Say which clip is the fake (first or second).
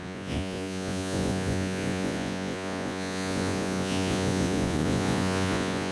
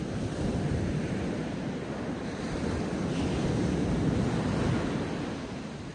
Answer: first